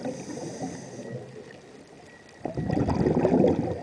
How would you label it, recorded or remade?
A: recorded